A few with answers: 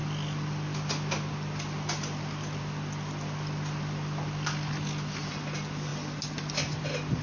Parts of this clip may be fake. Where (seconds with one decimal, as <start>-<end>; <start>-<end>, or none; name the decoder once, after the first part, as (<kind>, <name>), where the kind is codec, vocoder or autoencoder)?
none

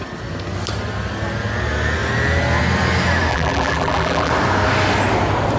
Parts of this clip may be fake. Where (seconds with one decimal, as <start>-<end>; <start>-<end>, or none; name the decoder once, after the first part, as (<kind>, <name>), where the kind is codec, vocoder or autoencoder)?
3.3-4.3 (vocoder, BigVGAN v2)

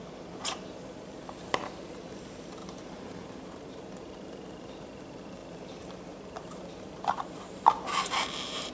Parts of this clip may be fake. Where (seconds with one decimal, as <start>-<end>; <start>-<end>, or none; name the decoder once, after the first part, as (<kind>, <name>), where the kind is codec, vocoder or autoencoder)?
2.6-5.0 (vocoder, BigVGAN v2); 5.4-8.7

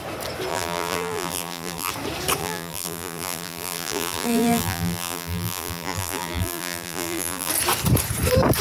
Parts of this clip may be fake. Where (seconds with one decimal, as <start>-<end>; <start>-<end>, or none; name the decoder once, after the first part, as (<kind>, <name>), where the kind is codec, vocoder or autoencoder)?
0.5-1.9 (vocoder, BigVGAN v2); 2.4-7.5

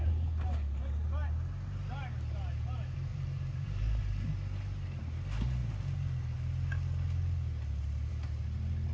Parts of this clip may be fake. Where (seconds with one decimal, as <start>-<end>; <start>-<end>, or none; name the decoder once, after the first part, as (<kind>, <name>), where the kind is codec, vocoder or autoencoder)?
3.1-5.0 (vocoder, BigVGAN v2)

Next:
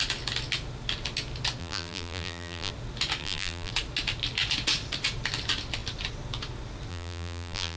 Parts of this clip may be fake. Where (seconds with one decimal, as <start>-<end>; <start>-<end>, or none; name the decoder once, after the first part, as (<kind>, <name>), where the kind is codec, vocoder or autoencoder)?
1.6-2.7 (vocoder, BigVGAN v2); 3.2-3.7; 6.9-7.8

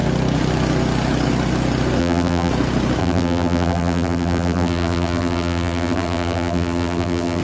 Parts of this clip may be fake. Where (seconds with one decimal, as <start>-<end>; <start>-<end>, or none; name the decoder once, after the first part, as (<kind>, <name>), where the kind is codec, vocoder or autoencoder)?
2.0-2.5 (vocoder, BigVGAN v2); 3.0-7.4

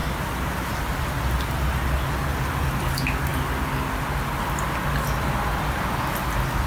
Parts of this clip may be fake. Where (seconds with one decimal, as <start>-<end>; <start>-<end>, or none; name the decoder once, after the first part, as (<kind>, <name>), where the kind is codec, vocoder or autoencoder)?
none